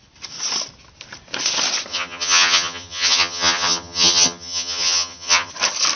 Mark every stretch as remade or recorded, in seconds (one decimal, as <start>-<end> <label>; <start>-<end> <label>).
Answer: 0.0-1.9 recorded; 1.9-5.5 remade; 5.5-6.0 recorded